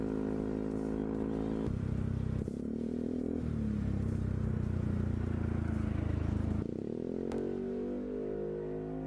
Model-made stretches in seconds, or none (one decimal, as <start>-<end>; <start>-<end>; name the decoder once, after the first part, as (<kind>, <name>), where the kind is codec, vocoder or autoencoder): 1.0-3.2 (vocoder, BigVGAN v2)